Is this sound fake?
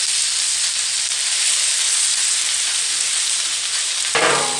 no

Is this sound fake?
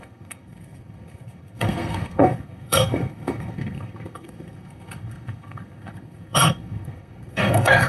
yes